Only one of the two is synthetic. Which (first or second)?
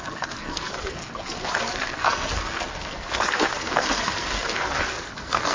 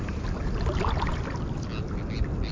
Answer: first